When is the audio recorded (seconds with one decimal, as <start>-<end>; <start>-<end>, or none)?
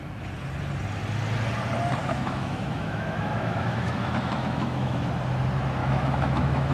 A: 0.0-2.0; 5.1-5.8